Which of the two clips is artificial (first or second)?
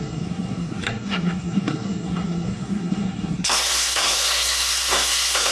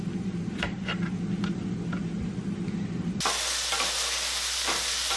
first